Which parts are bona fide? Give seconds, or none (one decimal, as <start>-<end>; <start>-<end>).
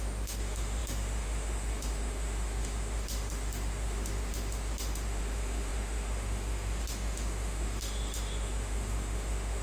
none